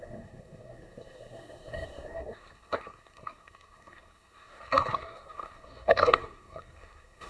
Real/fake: fake